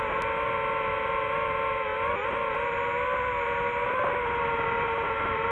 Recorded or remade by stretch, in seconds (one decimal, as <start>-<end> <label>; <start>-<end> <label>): 0.0-5.5 recorded